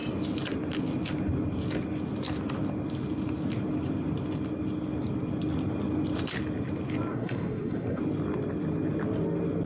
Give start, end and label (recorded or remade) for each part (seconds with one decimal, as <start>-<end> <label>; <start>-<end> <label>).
0.0-7.1 recorded; 7.1-8.0 remade; 8.0-9.7 recorded